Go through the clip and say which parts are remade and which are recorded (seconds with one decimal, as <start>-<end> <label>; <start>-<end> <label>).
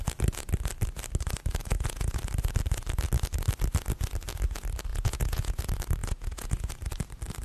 0.0-1.6 recorded; 1.6-2.2 remade; 2.2-4.9 recorded; 4.9-5.6 remade; 5.6-6.0 recorded; 6.0-6.7 remade; 6.7-7.4 recorded